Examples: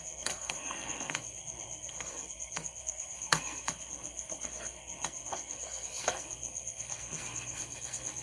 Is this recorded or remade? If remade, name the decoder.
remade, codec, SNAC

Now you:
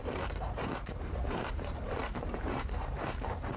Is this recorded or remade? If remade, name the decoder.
remade, vocoder, BigVGAN v2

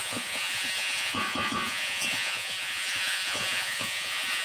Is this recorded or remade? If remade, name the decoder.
remade, vocoder, Vocos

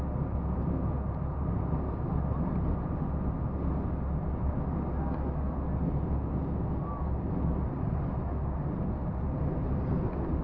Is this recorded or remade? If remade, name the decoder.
recorded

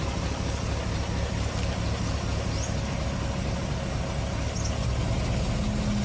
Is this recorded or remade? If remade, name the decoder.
recorded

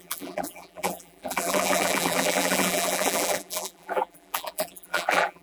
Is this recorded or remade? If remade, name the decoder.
remade, vocoder, BigVGAN v2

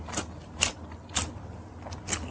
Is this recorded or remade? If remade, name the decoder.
recorded